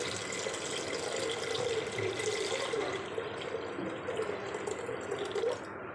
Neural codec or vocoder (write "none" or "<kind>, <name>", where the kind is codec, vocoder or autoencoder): none